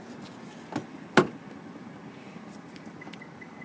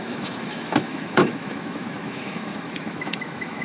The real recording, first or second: first